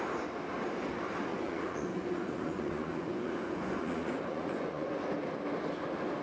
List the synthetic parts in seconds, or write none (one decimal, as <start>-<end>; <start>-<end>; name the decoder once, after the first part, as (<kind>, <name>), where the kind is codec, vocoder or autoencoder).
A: 1.3-5.0 (vocoder, Vocos)